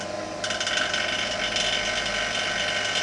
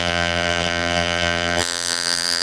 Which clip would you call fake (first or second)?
second